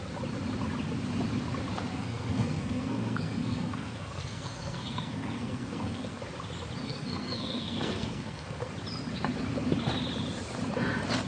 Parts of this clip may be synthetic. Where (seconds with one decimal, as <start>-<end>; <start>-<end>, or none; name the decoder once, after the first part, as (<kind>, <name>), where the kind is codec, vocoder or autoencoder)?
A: 1.9-6.2 (codec, SNAC); 6.8-8.7